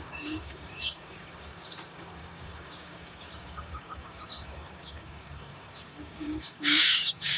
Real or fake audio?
fake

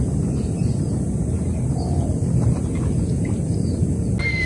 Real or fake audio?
real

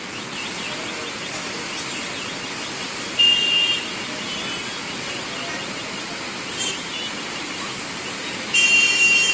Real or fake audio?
real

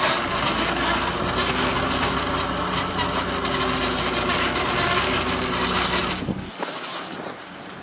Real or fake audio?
real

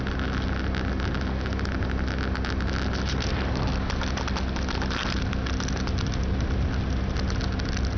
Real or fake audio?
real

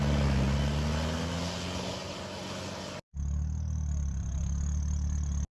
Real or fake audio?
real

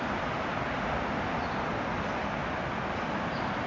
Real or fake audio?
real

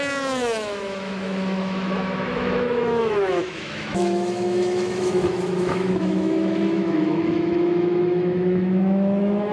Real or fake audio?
fake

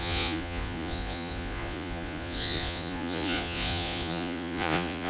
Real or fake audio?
fake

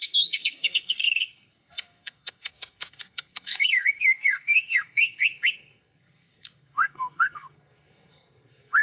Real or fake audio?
fake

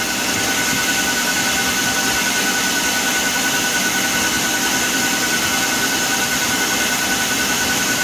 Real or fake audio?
real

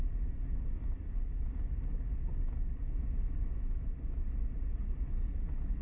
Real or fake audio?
real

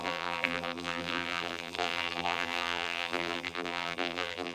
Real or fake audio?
fake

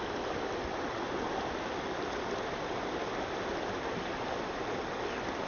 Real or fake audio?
real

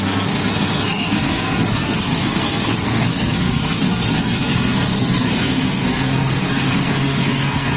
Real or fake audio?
fake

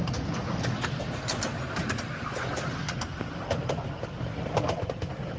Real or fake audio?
real